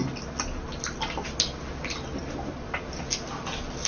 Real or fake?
real